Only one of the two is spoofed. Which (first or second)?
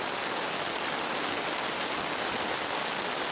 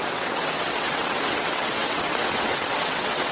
second